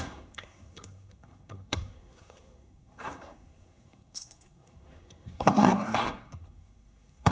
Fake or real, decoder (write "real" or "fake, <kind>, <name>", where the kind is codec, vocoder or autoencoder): fake, codec, SNAC